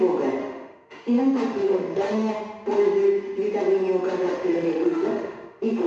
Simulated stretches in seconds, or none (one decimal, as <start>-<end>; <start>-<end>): 0.4-2.3; 4.3-5.9